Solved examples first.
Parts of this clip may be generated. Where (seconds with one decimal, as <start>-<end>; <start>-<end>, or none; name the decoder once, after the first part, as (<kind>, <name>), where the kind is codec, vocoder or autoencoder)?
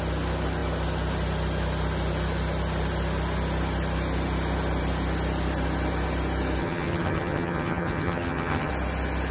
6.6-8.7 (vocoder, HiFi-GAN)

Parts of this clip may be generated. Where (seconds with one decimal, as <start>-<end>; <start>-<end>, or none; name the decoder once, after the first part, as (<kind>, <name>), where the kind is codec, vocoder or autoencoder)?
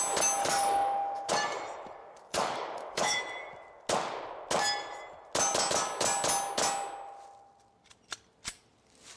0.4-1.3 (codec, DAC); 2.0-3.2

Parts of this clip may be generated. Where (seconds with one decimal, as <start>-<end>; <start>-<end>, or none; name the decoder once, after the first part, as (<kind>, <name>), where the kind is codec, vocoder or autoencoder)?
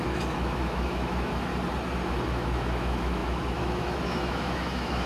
0.0-1.5 (autoencoder, DAC-VAE); 2.1-5.1